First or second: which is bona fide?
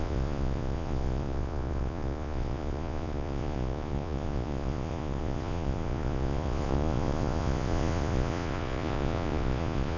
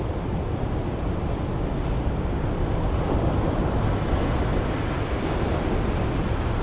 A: second